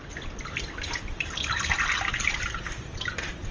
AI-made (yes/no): yes